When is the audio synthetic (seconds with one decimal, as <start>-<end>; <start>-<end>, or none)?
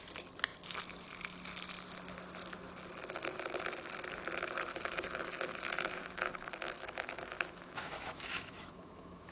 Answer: 4.7-9.3